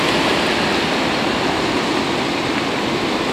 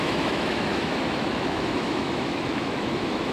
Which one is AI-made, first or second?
second